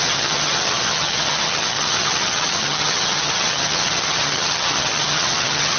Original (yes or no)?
no